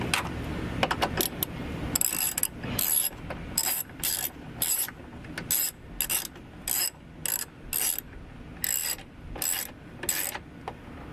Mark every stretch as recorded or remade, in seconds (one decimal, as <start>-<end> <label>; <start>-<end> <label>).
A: 0.0-3.6 recorded; 3.6-4.9 remade; 4.9-11.1 recorded